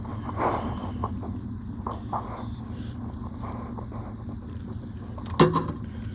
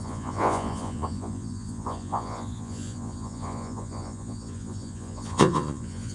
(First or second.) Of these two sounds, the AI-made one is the second